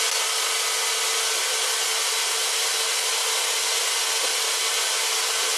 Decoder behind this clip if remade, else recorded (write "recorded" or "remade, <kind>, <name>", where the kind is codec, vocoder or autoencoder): recorded